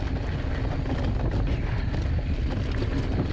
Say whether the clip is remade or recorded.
recorded